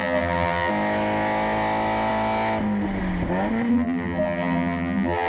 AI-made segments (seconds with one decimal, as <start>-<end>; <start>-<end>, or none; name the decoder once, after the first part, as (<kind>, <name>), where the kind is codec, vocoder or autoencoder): 0.0-0.7 (vocoder, BigVGAN v2); 3.7-5.3